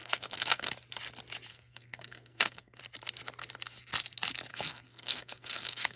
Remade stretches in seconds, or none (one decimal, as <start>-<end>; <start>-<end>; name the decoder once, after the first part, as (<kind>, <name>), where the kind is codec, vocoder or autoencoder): 0.0-0.7 (codec, SNAC); 1.5-2.8; 4.5-6.0